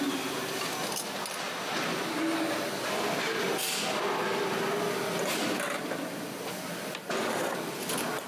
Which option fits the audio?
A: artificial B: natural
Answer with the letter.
B